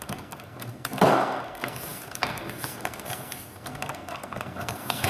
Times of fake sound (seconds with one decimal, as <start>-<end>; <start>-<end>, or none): 0.0-5.1